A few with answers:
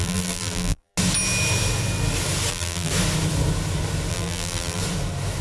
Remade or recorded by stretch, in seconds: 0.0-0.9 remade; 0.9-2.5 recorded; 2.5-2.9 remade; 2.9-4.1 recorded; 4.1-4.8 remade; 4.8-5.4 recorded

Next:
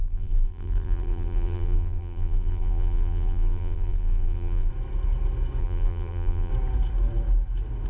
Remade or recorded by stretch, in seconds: 0.0-4.7 remade; 4.7-5.6 recorded; 5.6-6.5 remade; 6.5-7.9 recorded

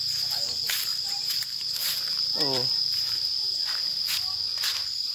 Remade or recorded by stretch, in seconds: 0.0-0.9 recorded; 0.9-4.0 remade; 4.0-5.1 recorded

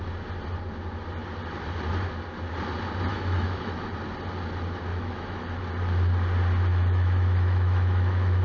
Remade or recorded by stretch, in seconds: 0.0-3.1 recorded; 3.1-3.9 remade; 3.9-4.9 recorded; 4.9-5.6 remade; 5.6-6.7 recorded; 6.7-8.4 remade

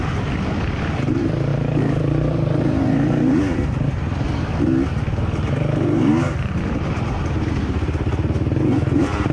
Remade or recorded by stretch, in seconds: 0.0-4.5 remade; 4.5-5.5 recorded; 5.5-6.1 remade; 6.1-7.5 recorded; 7.5-9.3 remade

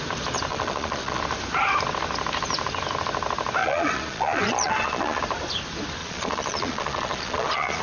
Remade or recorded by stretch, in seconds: 0.0-0.5 recorded; 0.5-1.2 remade; 1.2-3.6 recorded; 3.6-5.2 remade; 5.2-6.0 recorded; 6.0-7.8 remade